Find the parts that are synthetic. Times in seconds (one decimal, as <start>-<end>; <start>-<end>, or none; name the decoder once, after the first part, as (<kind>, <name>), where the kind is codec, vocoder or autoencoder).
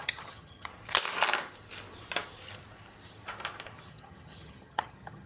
0.0-0.7 (vocoder, HiFi-GAN); 3.9-5.3